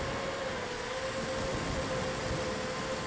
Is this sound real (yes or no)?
yes